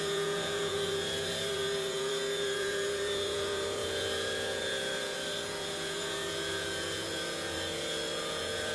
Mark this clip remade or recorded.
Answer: remade